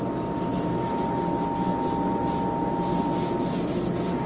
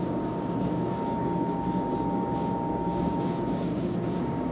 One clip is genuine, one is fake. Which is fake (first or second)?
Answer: second